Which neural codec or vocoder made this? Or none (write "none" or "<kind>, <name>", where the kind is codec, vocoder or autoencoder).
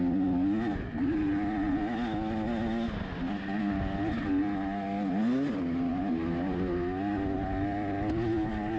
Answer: none